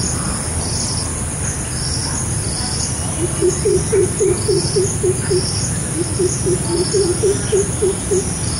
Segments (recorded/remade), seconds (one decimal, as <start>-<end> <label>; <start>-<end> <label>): 0.0-8.6 recorded